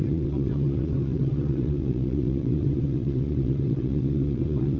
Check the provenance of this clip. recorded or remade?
remade